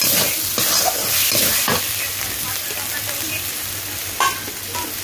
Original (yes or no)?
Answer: yes